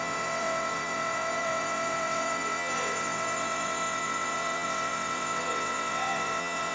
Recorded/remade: remade